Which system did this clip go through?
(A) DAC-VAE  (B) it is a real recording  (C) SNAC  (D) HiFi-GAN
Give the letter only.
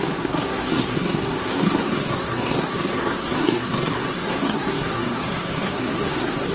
C